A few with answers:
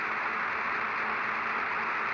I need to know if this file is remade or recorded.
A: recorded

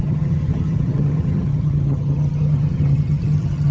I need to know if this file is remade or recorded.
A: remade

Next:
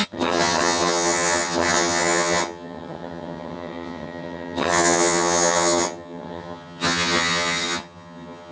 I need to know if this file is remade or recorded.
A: remade